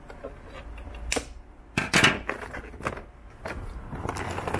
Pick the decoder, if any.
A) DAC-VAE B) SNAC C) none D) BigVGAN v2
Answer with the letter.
C